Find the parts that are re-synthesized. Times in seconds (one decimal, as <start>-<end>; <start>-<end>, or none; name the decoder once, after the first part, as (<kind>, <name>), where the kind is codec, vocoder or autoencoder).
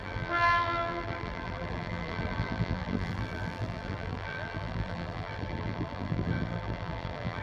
0.0-7.4 (vocoder, BigVGAN v2)